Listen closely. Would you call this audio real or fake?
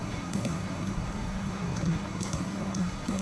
fake